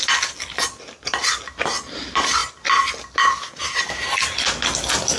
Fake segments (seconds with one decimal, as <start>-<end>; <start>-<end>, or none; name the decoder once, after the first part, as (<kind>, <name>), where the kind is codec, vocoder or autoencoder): none